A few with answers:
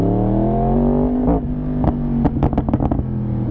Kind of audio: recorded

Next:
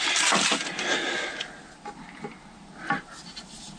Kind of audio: recorded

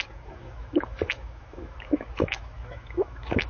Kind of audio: remade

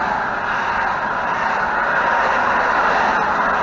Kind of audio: recorded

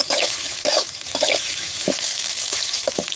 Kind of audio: remade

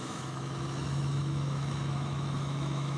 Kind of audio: remade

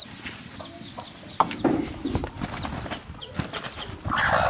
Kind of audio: recorded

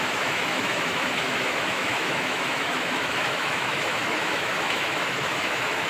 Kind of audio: remade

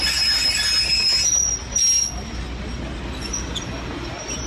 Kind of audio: recorded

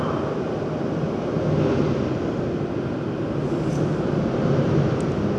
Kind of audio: recorded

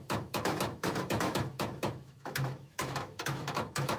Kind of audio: remade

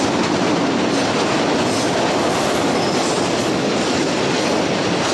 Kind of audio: recorded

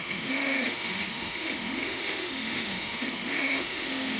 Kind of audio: remade